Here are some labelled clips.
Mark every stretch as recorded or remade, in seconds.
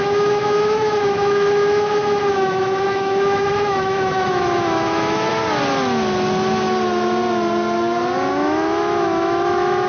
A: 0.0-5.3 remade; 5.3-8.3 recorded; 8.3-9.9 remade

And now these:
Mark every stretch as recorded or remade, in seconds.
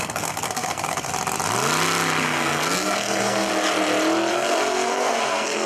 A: 0.0-1.1 remade; 1.1-2.2 recorded; 2.2-3.5 remade; 3.5-4.3 recorded; 4.3-5.7 remade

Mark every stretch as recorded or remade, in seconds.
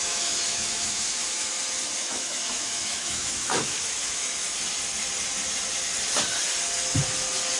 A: 0.0-1.5 remade; 1.5-2.0 recorded; 2.0-4.4 remade; 4.4-7.6 recorded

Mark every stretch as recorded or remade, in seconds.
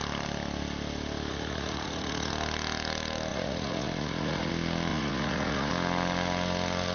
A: 0.0-1.3 recorded; 1.3-2.3 remade; 2.3-3.3 recorded; 3.3-4.5 remade; 4.5-4.9 recorded; 4.9-5.7 remade; 5.7-6.9 recorded